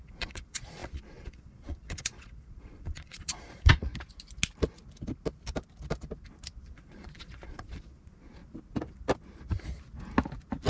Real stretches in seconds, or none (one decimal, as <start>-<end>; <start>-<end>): 3.9-6.6; 8.4-10.7